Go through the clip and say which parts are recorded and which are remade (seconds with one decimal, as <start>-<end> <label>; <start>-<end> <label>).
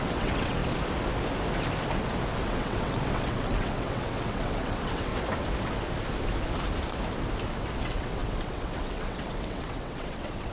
0.0-0.6 remade; 0.6-2.4 recorded; 2.4-5.1 remade; 5.1-7.8 recorded; 7.8-10.5 remade